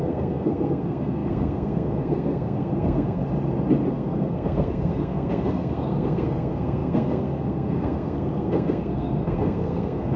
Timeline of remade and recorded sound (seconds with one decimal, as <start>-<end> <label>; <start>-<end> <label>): 0.0-3.2 remade; 3.2-3.9 recorded; 3.9-10.2 remade